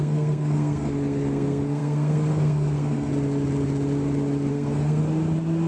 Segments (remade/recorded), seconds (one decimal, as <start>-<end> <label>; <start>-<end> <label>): 0.0-3.1 remade; 3.1-4.5 recorded; 4.5-5.0 remade; 5.0-5.7 recorded